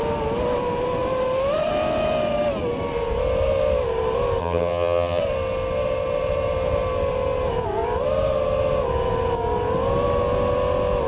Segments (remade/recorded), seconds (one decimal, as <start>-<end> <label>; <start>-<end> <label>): 0.0-4.4 recorded; 4.4-5.2 remade; 5.2-11.1 recorded